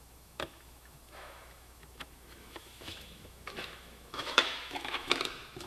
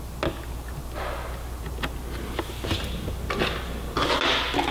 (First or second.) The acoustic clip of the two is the second